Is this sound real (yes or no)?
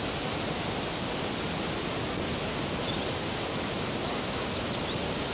yes